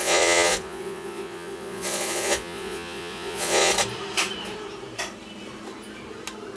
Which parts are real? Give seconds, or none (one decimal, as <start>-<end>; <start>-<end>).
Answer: 3.7-6.6